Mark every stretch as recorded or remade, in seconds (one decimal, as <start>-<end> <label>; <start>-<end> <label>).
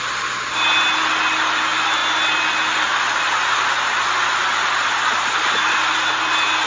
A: 0.0-6.7 recorded